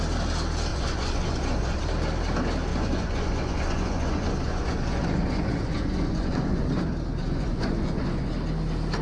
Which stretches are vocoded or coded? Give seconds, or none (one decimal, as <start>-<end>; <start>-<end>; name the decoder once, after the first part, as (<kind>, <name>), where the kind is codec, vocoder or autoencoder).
0.7-1.8 (vocoder, Vocos); 2.7-6.8; 7.2-8.3